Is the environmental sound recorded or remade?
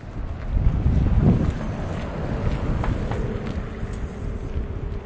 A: recorded